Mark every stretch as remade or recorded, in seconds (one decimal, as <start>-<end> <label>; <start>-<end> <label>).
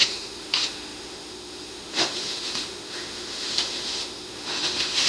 0.0-5.1 remade